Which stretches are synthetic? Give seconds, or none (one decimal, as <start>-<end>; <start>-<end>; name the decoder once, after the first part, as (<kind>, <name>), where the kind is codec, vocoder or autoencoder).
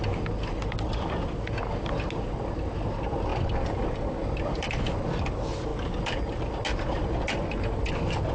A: none